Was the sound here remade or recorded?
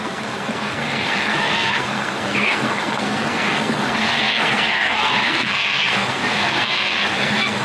remade